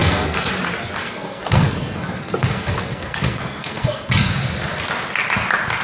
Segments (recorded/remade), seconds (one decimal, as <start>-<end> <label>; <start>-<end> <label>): 0.0-0.5 remade; 0.5-1.0 recorded; 1.0-4.3 remade; 4.3-5.8 recorded